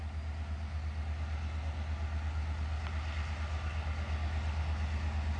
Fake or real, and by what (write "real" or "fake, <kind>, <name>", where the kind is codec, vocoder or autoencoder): real